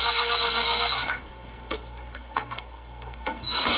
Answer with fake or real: fake